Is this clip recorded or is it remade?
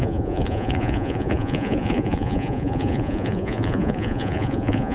remade